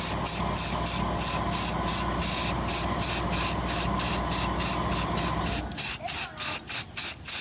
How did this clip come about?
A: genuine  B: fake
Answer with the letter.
A